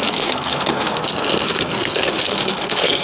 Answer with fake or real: fake